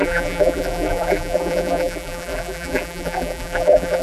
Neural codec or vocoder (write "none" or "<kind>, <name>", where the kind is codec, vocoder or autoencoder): vocoder, BigVGAN v2